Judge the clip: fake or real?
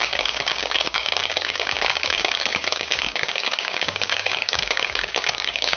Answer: fake